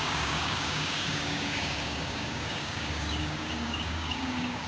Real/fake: fake